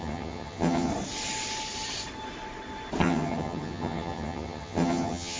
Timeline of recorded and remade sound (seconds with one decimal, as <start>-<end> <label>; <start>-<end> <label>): 0.0-0.9 remade; 0.9-3.0 recorded; 3.0-5.4 remade